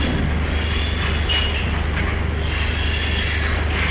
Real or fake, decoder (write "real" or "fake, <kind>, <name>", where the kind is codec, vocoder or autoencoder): real